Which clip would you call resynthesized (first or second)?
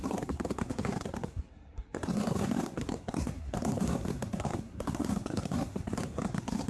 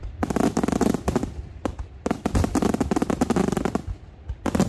first